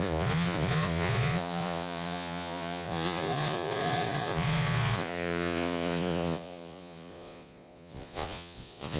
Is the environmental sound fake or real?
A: fake